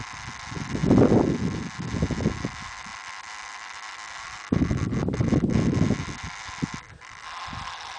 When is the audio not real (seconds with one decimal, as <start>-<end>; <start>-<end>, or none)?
none